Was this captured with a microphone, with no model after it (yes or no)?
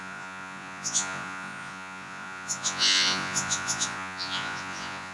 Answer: no